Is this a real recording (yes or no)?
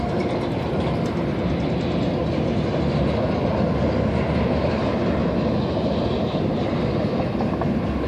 yes